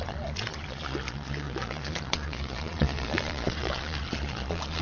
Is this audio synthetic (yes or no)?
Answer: yes